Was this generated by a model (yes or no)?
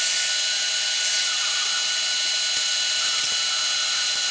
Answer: no